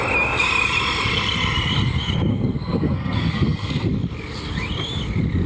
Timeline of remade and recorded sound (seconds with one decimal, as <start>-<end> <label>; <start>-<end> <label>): 0.0-2.3 recorded; 2.3-3.9 remade; 3.9-5.5 recorded